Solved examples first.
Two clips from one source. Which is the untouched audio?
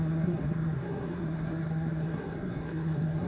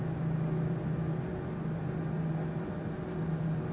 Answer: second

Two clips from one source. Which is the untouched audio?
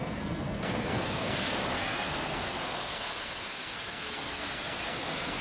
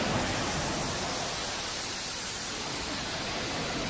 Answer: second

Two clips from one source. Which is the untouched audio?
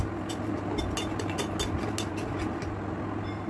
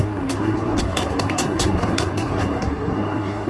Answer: first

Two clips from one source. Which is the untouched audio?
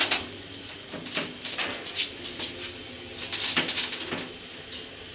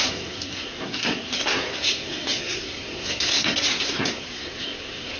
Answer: first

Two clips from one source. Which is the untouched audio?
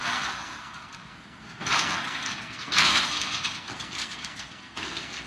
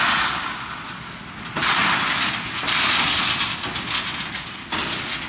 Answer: second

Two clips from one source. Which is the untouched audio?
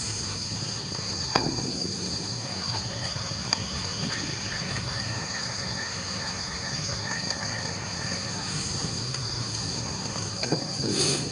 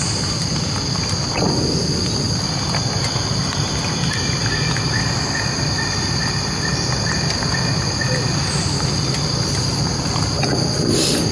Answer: second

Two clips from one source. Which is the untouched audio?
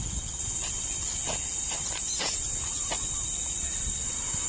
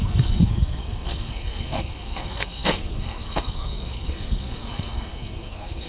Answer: first